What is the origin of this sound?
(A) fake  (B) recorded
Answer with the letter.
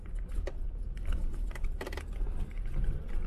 B